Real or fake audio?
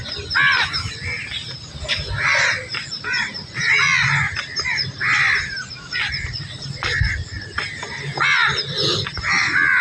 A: real